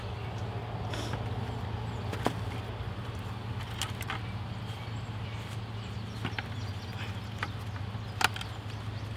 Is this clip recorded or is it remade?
recorded